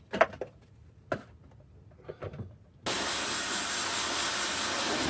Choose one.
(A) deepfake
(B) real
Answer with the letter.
B